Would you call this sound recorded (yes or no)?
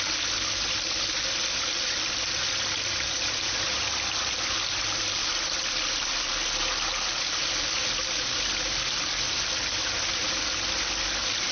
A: yes